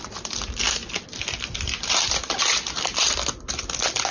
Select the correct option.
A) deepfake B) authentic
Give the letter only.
B